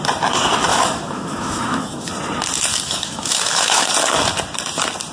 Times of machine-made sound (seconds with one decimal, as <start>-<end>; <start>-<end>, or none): 0.7-2.1; 2.7-3.9